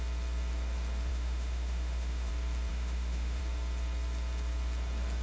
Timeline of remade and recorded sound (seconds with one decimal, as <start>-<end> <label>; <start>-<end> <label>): 0.0-1.1 recorded; 1.1-2.3 remade; 2.3-2.7 recorded; 2.7-3.4 remade; 3.4-5.2 recorded